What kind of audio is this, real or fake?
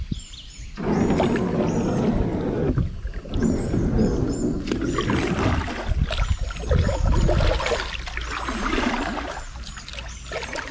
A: real